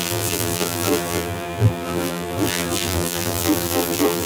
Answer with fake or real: fake